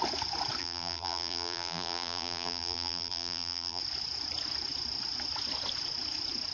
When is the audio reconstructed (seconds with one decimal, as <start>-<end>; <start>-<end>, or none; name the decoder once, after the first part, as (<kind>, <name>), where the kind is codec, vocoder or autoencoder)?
0.6-3.8 (vocoder, BigVGAN v2)